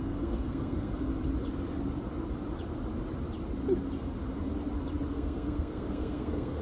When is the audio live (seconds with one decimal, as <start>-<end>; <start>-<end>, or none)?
1.1-5.1